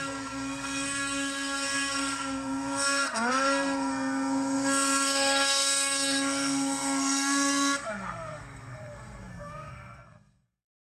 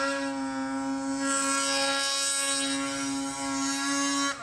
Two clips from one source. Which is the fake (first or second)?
first